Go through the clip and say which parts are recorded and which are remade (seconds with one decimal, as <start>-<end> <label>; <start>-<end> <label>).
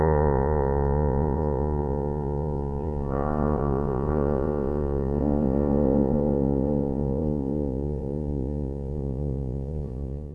0.0-10.3 remade